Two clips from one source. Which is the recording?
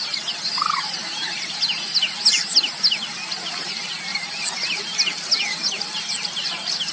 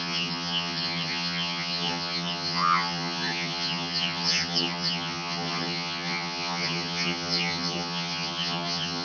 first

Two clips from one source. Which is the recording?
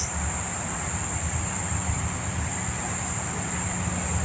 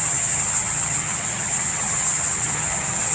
first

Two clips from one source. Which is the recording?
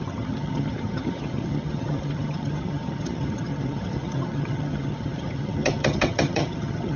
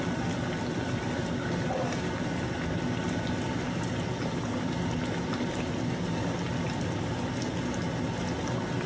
second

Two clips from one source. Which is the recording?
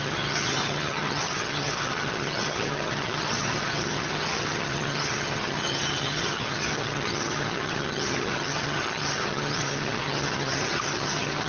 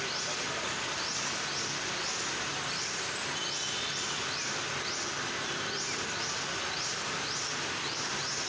second